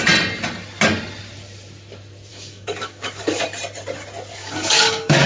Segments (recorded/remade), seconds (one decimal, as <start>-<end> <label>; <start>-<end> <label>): 0.0-2.3 recorded; 2.3-3.4 remade; 3.4-4.4 recorded; 4.4-5.3 remade